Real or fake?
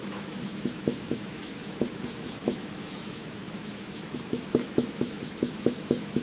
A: fake